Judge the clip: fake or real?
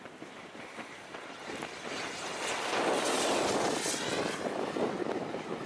real